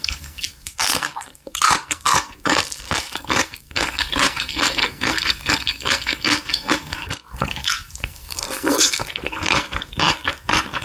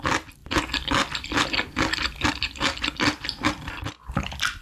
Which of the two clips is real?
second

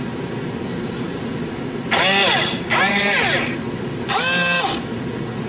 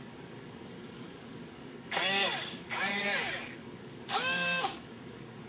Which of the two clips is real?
first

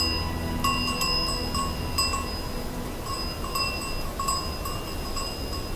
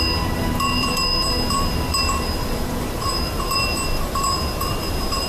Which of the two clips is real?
first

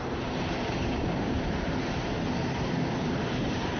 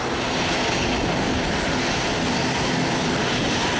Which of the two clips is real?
second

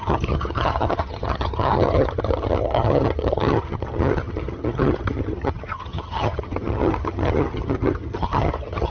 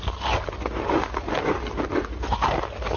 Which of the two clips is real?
second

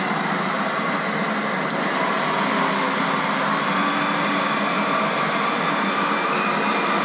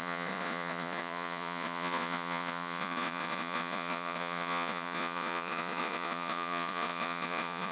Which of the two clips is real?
first